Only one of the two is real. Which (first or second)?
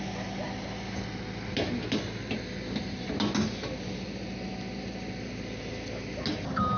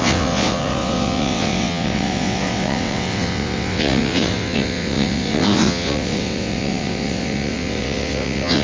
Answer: first